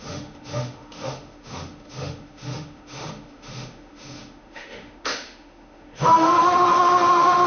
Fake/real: fake